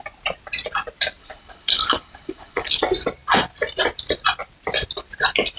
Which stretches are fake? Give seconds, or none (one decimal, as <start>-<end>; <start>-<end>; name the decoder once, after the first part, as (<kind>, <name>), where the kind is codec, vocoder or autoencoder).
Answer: 1.2-2.8 (codec, HILCodec)